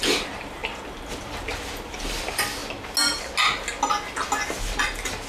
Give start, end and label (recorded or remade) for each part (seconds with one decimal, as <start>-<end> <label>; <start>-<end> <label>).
0.0-0.6 remade; 0.6-2.0 recorded; 2.0-2.6 remade; 2.6-4.8 recorded; 4.8-5.3 remade